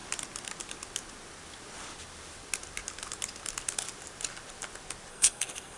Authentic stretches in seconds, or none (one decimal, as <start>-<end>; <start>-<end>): 0.0-5.1